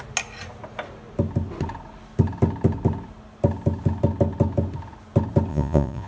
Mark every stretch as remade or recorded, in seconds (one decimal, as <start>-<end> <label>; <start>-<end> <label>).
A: 0.0-5.5 recorded; 5.5-6.1 remade